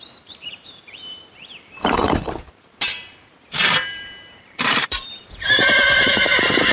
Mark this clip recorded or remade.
remade